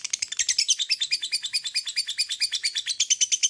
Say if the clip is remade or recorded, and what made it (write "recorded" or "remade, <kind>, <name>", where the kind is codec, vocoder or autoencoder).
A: recorded